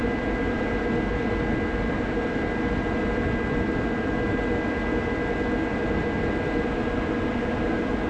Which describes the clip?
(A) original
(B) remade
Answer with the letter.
A